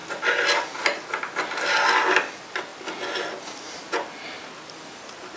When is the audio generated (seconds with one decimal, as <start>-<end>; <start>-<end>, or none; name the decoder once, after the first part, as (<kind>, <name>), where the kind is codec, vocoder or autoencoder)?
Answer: none